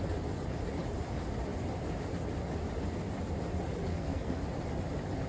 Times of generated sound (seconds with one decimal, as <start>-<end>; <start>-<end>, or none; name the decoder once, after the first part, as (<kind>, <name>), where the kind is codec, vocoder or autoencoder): 3.9-4.4 (codec, SNAC)